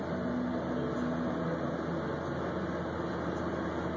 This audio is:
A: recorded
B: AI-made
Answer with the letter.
A